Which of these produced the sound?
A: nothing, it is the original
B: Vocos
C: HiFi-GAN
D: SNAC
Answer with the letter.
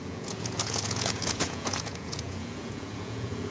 B